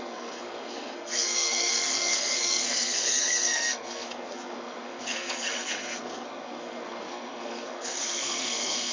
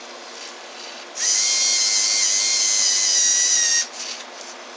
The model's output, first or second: first